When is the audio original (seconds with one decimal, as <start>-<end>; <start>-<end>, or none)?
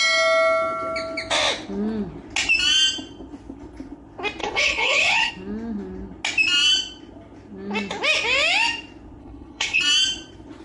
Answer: 0.0-4.4; 5.3-9.2; 9.8-10.6